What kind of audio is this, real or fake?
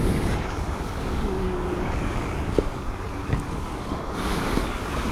fake